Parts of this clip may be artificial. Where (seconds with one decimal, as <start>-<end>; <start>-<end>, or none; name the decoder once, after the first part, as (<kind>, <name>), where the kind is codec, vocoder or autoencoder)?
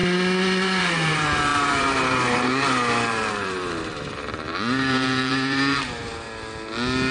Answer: 0.8-6.0 (vocoder, BigVGAN v2)